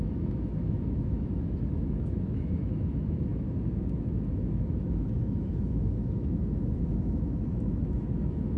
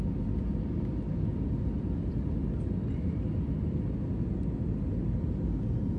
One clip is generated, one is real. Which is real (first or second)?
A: second